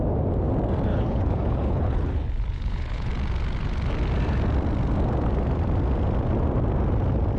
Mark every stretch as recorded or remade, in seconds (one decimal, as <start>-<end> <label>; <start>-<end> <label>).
0.0-0.9 recorded; 0.9-3.1 remade; 3.1-7.4 recorded